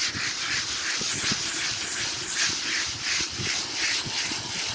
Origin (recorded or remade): recorded